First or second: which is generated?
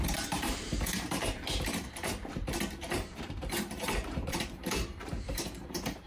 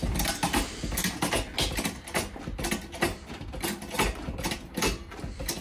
first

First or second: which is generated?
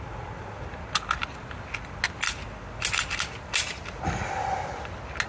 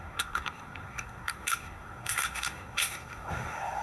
second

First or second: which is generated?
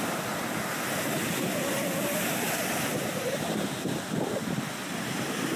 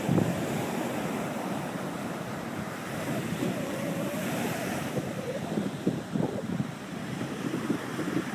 second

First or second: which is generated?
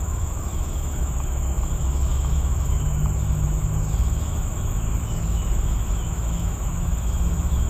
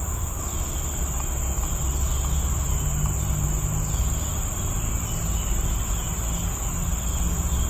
first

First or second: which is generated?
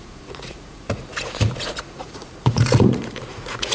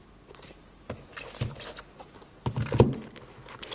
first